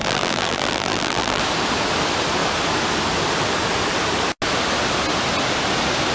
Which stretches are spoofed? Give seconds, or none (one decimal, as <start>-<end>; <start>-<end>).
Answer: 0.0-1.4